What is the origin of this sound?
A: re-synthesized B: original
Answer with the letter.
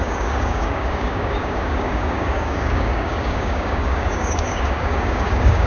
A